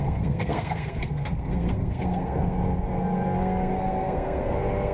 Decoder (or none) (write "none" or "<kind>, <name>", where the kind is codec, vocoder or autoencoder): codec, SNAC